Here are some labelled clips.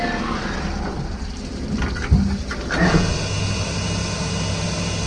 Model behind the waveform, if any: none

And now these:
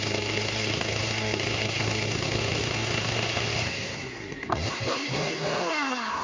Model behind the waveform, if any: codec, SNAC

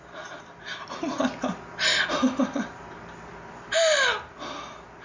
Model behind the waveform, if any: none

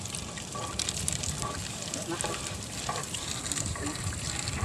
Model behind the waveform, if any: vocoder, BigVGAN v2